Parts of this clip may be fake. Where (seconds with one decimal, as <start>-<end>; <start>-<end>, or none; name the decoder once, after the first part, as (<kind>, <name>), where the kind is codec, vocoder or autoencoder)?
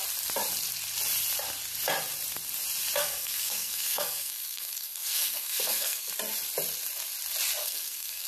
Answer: 3.0-6.1 (codec, SNAC); 7.6-8.3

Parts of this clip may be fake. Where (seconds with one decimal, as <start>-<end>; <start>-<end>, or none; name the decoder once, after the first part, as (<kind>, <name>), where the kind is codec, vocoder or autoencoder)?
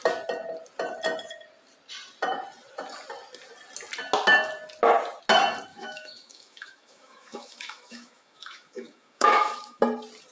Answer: 5.7-9.8 (autoencoder, DAC-VAE)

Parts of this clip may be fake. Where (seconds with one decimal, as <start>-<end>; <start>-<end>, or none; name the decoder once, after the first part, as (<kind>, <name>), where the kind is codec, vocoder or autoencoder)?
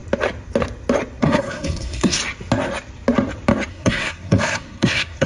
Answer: 1.2-2.2 (codec, SNAC); 3.7-5.3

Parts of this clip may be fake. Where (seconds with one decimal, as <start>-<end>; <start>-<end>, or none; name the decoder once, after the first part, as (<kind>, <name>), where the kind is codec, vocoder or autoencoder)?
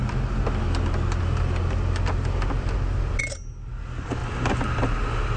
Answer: none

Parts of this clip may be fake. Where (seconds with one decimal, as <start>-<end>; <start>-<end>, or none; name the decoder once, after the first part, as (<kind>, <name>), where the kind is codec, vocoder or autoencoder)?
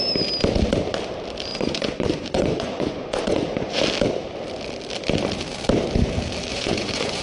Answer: 1.5-3.8 (vocoder, Vocos); 6.5-7.2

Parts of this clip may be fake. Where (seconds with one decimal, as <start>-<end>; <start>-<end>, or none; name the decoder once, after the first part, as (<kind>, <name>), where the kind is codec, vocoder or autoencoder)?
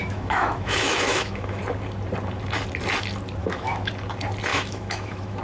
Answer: 0.0-1.6 (autoencoder, DAC-VAE); 3.4-3.9; 4.5-5.4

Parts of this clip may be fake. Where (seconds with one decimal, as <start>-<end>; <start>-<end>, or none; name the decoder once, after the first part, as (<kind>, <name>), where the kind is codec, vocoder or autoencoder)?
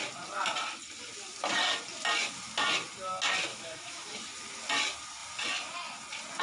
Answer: 3.5-4.1 (autoencoder, DAC-VAE)